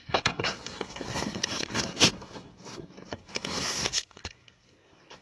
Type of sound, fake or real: fake